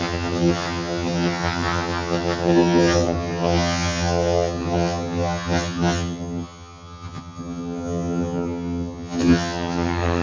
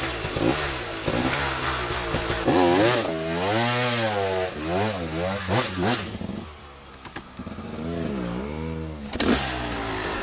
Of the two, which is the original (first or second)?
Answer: second